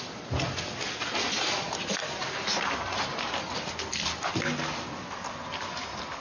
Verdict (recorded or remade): recorded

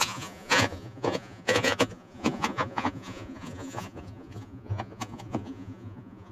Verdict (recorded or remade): remade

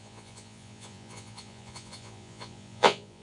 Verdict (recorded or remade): remade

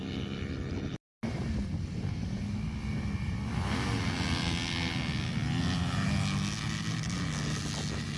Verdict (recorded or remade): recorded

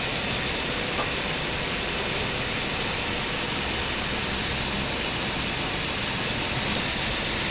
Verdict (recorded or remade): recorded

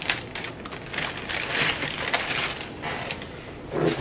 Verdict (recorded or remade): recorded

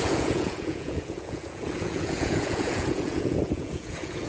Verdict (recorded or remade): remade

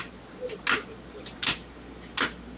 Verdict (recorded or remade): recorded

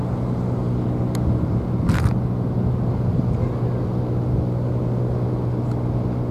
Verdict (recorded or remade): recorded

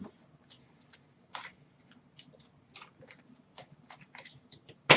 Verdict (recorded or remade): recorded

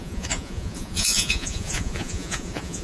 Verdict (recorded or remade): remade